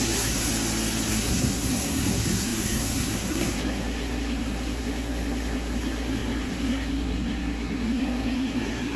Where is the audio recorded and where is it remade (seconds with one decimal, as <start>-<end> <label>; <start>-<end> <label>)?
0.0-0.5 remade; 0.5-1.1 recorded; 1.1-9.0 remade